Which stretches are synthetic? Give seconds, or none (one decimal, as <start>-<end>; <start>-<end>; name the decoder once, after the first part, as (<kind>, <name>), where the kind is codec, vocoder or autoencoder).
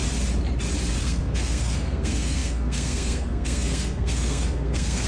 1.0-5.1 (codec, SNAC)